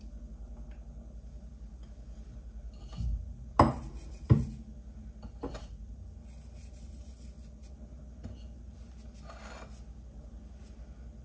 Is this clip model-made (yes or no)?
no